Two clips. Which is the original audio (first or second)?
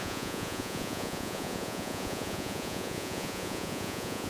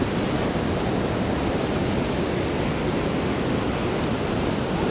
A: second